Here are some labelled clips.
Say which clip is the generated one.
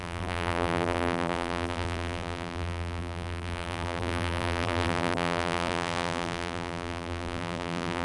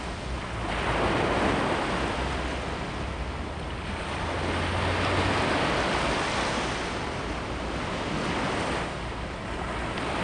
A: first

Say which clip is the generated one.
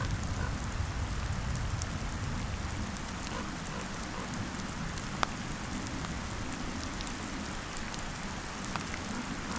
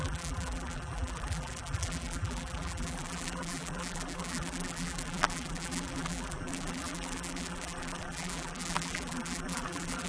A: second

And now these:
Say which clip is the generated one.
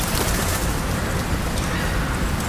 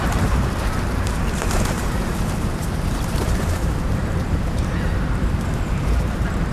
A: second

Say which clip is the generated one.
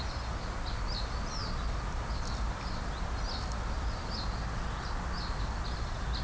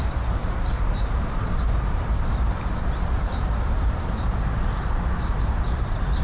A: second